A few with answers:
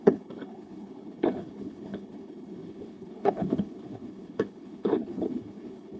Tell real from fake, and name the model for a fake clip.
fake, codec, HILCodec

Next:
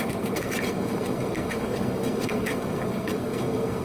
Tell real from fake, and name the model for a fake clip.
fake, codec, SNAC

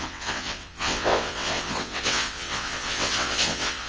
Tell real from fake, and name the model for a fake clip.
fake, vocoder, WaveNeXt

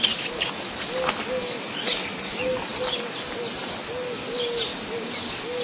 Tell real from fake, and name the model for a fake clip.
real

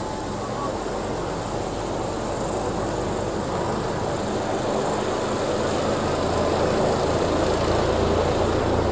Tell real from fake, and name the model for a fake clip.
real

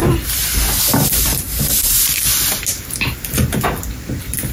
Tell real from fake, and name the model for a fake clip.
real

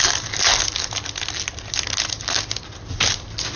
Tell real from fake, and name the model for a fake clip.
real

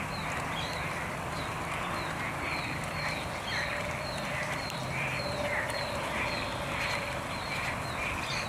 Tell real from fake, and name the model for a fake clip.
fake, vocoder, BigVGAN v2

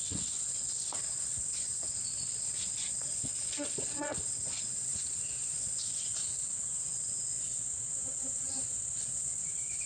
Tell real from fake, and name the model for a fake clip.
fake, vocoder, WaveNeXt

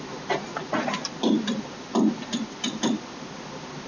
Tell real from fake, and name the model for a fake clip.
real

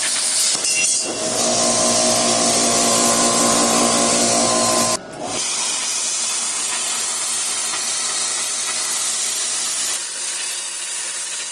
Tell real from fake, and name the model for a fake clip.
real